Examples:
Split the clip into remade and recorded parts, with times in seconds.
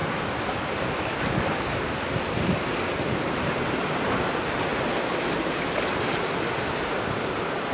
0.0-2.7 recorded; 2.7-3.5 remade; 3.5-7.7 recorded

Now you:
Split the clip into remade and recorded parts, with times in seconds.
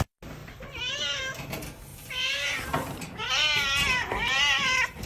0.0-0.4 recorded; 0.4-0.9 remade; 0.9-1.9 recorded; 1.9-5.1 remade